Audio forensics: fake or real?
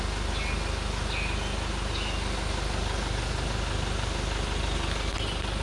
real